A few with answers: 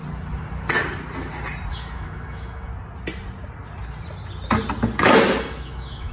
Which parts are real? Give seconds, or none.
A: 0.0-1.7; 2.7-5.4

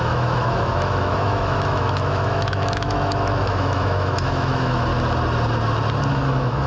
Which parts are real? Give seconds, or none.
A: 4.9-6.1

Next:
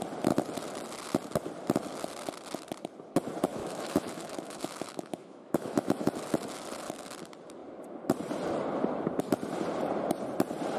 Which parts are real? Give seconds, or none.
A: 0.0-3.5; 6.1-10.8